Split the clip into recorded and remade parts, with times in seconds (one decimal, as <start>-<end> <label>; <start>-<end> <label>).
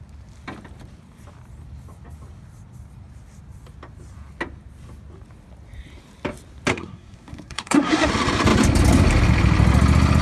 0.0-6.7 recorded; 6.7-8.1 remade; 8.1-10.2 recorded